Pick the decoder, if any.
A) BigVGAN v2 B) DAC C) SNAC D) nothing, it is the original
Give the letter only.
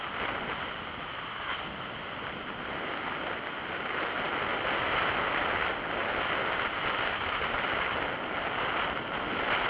D